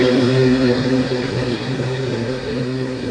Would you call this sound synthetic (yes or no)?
yes